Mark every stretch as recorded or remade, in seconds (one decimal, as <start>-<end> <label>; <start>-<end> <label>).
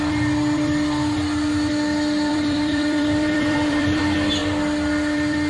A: 0.0-2.3 recorded; 2.3-4.0 remade; 4.0-5.5 recorded